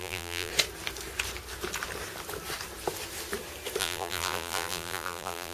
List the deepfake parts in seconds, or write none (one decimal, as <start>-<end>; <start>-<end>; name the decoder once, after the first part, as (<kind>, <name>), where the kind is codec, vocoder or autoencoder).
0.0-0.5 (vocoder, BigVGAN v2); 3.8-5.5